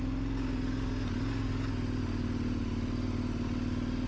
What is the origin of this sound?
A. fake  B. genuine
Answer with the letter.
B